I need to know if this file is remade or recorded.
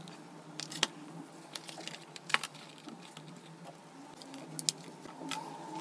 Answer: recorded